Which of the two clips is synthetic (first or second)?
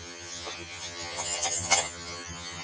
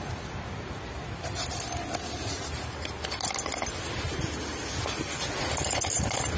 first